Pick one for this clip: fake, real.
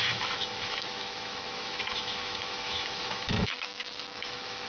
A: fake